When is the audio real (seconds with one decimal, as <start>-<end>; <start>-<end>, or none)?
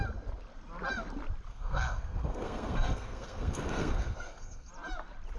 0.0-1.5; 4.7-5.4